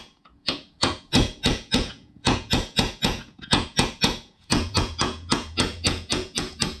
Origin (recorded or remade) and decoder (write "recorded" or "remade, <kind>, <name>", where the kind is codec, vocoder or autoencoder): remade, vocoder, Vocos